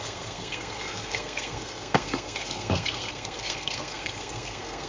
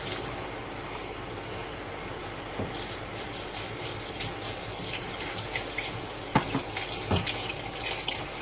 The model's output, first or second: first